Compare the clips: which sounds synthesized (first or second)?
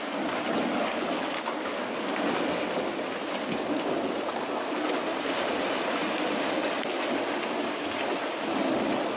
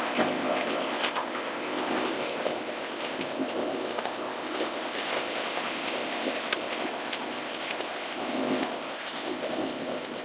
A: second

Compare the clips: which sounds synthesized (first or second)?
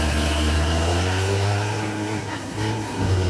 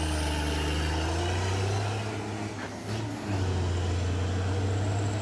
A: first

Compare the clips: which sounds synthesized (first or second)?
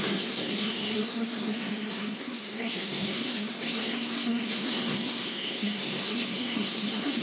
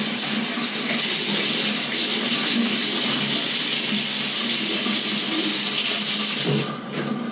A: first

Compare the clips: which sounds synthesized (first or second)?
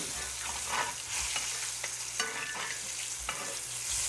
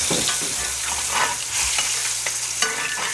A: second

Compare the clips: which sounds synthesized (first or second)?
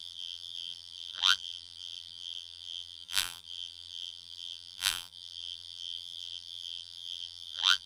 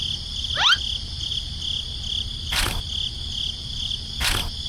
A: first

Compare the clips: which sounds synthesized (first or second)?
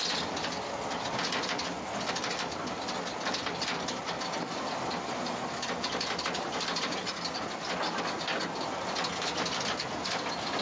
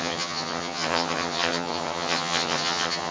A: second